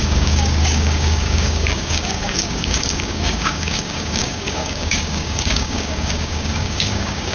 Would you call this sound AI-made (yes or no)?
yes